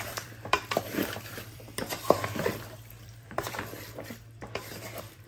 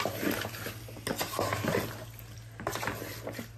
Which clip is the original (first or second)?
second